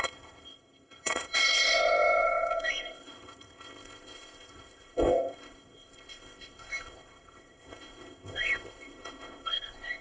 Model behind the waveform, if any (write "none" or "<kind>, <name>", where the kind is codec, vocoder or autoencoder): codec, ZipCodec